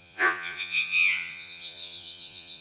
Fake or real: fake